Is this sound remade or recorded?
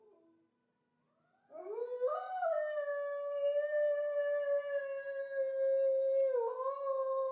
recorded